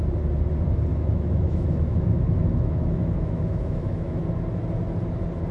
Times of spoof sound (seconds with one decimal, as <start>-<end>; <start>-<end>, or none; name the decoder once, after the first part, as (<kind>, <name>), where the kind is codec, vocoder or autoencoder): 0.9-4.2 (autoencoder, DAC-VAE)